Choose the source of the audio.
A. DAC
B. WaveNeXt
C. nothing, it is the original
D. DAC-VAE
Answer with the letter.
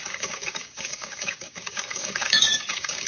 A